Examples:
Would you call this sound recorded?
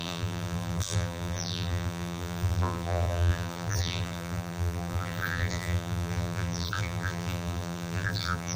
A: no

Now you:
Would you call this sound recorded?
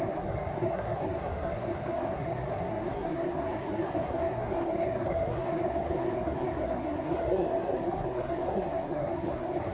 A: no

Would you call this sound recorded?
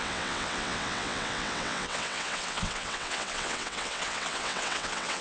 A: no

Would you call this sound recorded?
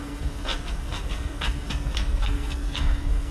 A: no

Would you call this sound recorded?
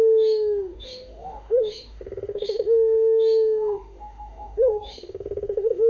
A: no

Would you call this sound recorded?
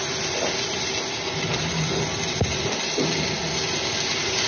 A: yes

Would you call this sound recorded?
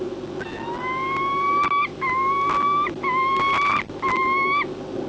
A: yes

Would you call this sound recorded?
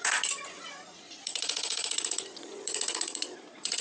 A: no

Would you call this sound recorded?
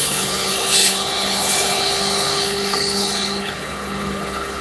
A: no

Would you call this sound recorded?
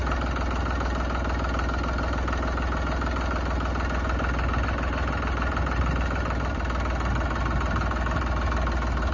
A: yes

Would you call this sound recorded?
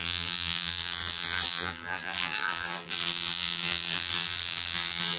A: no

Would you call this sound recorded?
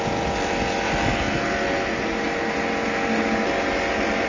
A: yes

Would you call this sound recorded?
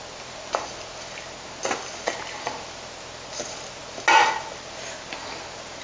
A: yes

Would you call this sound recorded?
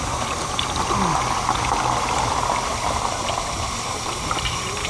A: yes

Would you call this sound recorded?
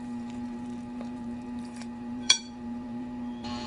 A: no